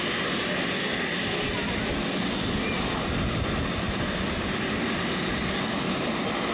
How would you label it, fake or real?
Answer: real